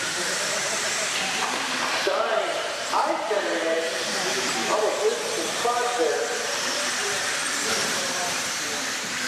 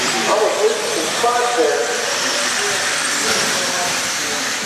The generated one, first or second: first